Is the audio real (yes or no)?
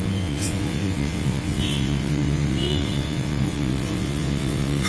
no